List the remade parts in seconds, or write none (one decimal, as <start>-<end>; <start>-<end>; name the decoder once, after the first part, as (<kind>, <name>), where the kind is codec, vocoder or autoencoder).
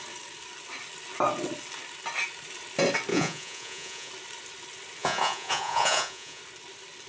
3.1-4.1 (vocoder, Vocos); 5.0-6.4